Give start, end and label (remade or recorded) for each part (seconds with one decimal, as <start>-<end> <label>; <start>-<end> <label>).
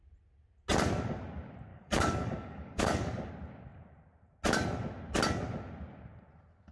0.0-1.7 recorded; 1.7-3.3 remade; 3.3-6.7 recorded